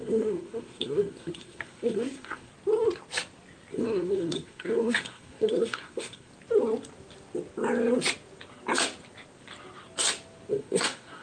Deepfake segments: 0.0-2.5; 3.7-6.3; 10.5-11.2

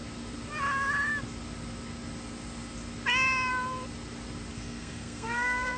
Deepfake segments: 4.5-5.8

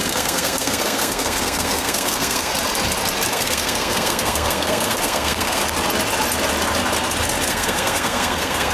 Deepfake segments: 0.0-2.5; 3.3-5.6; 7.5-8.7

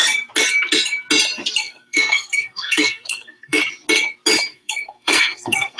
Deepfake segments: 1.6-3.6; 4.5-5.8

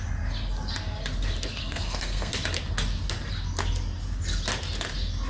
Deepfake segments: 1.6-2.3